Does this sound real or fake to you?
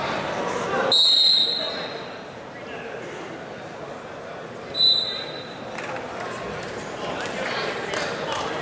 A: real